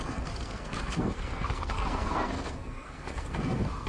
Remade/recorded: remade